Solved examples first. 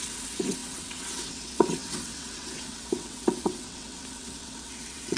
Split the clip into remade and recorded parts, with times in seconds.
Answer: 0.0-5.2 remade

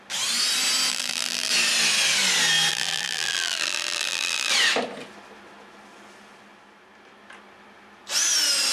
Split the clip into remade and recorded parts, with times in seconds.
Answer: 0.0-0.9 recorded; 0.9-1.5 remade; 1.5-2.7 recorded; 2.7-4.5 remade; 4.5-8.7 recorded

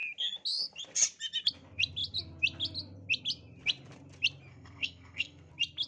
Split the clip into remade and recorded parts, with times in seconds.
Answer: 0.0-4.5 recorded; 4.5-5.5 remade; 5.5-5.9 recorded

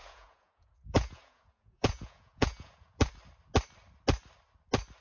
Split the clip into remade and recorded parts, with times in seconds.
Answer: 0.0-3.0 remade; 3.0-5.0 recorded

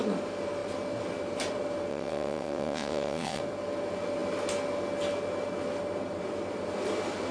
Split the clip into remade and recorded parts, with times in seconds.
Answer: 0.0-1.9 recorded; 1.9-3.4 remade; 3.4-7.3 recorded

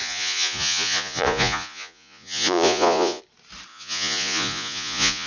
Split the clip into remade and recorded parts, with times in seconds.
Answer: 0.0-3.2 remade; 3.2-3.7 recorded; 3.7-5.3 remade